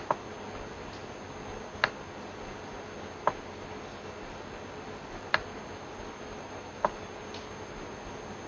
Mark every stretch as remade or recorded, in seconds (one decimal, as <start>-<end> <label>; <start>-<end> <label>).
0.0-8.5 recorded